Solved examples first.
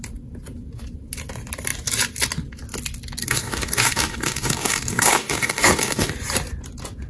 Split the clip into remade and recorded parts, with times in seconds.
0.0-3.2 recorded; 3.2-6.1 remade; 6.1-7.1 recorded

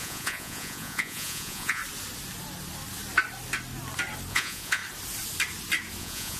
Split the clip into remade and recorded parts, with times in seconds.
0.0-1.8 remade; 1.8-4.3 recorded; 4.3-4.8 remade; 4.8-6.0 recorded; 6.0-6.4 remade